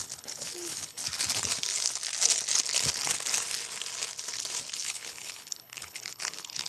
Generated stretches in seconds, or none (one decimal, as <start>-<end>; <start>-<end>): 0.0-1.0; 4.8-6.7